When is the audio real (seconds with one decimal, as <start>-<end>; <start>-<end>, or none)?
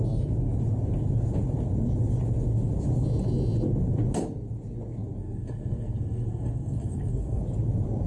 0.0-5.2; 7.4-8.1